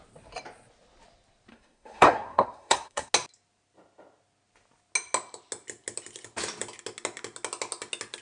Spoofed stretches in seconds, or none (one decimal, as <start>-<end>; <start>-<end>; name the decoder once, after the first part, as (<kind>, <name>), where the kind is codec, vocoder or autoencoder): 1.5-3.1 (codec, SNAC)